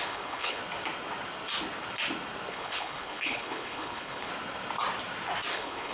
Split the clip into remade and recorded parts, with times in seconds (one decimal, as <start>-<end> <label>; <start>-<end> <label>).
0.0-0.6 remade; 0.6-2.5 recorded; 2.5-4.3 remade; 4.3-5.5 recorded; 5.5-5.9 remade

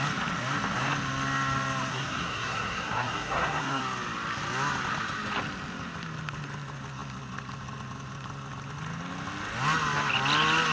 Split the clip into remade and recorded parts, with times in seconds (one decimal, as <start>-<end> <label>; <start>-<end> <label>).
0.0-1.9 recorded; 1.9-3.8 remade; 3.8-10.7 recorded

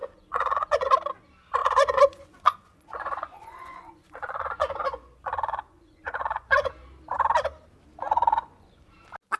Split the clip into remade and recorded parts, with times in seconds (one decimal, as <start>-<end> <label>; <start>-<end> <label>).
0.0-0.9 remade; 0.9-1.6 recorded; 1.6-6.7 remade; 6.7-7.9 recorded; 7.9-8.9 remade; 8.9-9.4 recorded

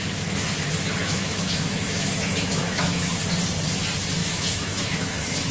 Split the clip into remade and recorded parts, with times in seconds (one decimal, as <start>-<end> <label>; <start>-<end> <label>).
0.0-1.0 recorded; 1.0-3.1 remade; 3.1-4.2 recorded; 4.2-5.5 remade

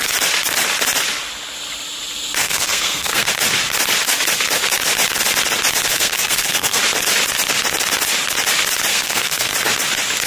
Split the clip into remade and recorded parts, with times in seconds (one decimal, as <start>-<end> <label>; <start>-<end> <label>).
0.0-2.4 recorded; 2.4-3.3 remade; 3.3-5.9 recorded; 5.9-6.8 remade; 6.8-8.9 recorded; 8.9-9.5 remade; 9.5-10.3 recorded

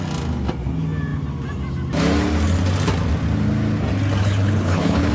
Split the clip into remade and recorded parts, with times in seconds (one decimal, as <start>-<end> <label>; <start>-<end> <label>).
0.0-4.2 recorded; 4.2-5.1 remade